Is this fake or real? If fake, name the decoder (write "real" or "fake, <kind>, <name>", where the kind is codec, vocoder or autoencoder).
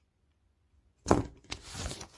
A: fake, vocoder, Vocos